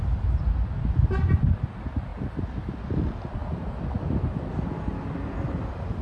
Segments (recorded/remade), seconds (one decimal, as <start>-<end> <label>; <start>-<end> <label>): 0.0-6.0 recorded